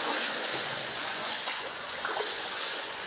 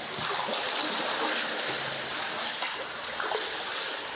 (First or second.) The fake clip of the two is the first